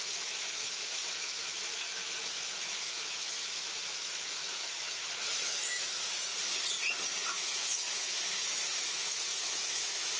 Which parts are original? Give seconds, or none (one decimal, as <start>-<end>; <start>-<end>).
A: 6.3-7.3